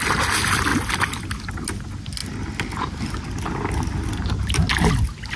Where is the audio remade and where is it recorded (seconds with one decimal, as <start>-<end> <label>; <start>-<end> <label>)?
0.0-0.7 recorded; 0.7-1.5 remade; 1.5-5.4 recorded